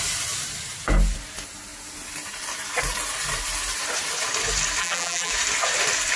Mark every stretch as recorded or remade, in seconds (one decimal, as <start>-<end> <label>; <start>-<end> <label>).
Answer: 0.0-4.8 recorded; 4.8-5.3 remade; 5.3-6.2 recorded